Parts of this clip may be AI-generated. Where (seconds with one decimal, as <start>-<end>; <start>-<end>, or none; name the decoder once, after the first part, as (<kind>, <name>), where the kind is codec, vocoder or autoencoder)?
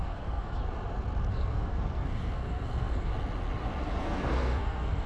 0.0-0.6 (codec, SNAC); 1.3-3.1; 4.0-5.1